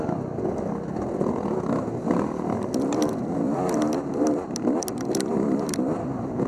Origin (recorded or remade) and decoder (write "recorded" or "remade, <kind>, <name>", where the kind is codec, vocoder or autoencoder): recorded